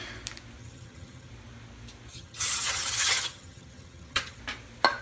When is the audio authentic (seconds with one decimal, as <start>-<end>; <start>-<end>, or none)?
0.0-0.6; 1.3-2.1; 4.4-5.0